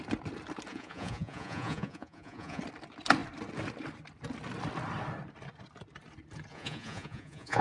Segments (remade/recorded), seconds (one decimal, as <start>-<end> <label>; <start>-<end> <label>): 0.0-0.7 recorded; 0.7-2.6 remade; 2.6-6.5 recorded; 6.5-7.6 remade